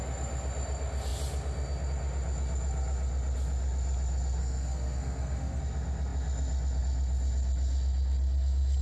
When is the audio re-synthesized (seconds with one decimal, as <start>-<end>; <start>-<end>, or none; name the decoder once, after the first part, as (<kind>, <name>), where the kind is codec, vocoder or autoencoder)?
4.4-5.6 (codec, SNAC)